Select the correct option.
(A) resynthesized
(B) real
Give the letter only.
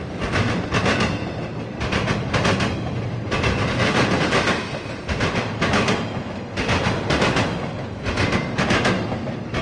B